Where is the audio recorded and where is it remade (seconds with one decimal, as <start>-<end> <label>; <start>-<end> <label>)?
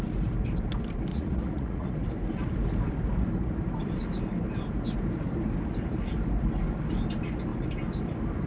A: 0.0-1.1 recorded; 1.1-1.9 remade; 1.9-8.5 recorded